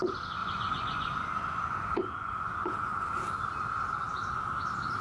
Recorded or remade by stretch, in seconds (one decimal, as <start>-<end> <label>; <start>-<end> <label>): 0.0-0.4 recorded; 0.4-3.1 remade; 3.1-5.0 recorded